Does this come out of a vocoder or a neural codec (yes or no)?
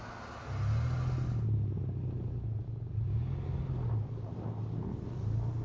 no